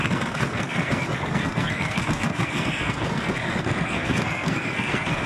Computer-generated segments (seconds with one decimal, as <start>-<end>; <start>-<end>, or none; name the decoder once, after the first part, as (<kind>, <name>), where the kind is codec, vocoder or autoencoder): 0.0-5.3 (codec, SNAC)